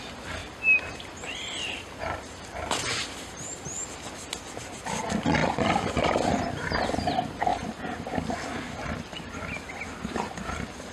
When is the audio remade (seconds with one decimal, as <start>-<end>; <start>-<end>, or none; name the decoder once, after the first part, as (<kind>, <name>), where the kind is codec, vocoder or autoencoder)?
0.4-4.5 (vocoder, BigVGAN v2); 5.4-6.4